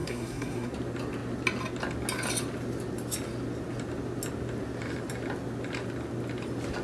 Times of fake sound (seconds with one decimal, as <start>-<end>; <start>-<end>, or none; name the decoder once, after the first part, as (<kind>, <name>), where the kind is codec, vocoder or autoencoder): 0.0-0.7 (codec, SNAC)